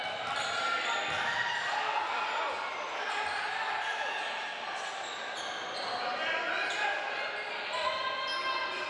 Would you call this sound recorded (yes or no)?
yes